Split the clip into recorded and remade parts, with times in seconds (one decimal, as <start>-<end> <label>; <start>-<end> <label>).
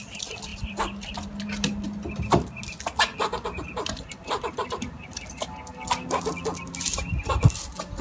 0.0-8.0 recorded